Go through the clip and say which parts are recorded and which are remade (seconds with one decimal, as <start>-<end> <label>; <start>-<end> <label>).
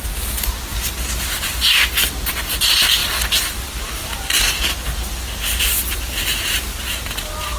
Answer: 0.0-3.0 recorded; 3.0-4.6 remade; 4.6-7.6 recorded